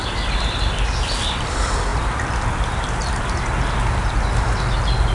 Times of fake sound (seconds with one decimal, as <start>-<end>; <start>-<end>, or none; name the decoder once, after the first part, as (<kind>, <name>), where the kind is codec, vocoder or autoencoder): none